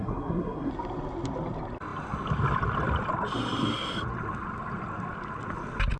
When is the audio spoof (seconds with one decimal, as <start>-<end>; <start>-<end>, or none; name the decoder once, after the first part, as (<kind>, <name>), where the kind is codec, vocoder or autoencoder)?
0.0-0.7 (codec, SNAC)